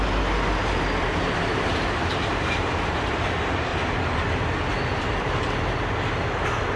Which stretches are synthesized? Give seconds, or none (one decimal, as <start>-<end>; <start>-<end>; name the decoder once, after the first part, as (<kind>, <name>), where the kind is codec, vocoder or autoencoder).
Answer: 0.6-3.1 (vocoder, BigVGAN v2); 3.7-5.7